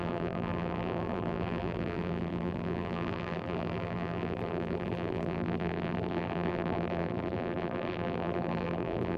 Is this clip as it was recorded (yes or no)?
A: no